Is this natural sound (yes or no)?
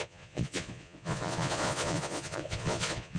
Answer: no